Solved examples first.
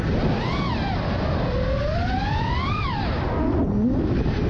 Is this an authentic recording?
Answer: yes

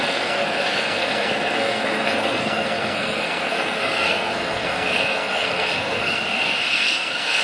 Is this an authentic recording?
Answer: no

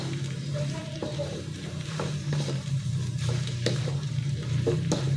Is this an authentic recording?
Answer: no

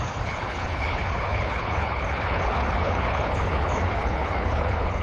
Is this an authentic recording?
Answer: no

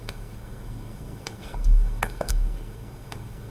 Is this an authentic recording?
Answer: no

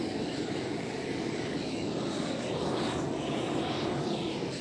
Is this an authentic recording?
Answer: no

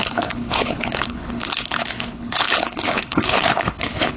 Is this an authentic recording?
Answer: no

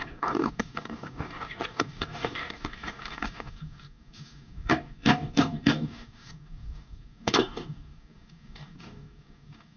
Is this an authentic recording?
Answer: no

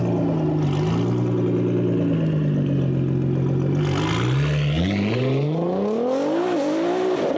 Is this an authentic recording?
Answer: yes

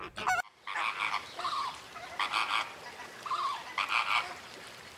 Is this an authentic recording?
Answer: yes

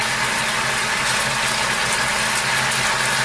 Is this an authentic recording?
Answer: yes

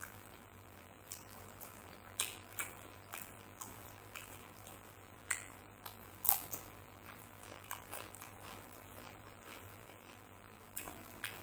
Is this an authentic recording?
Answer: no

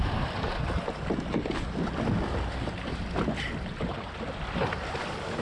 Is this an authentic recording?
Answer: yes